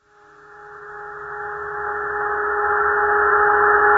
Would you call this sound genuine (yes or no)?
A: yes